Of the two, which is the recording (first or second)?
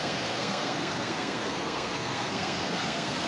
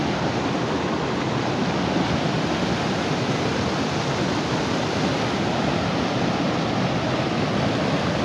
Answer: second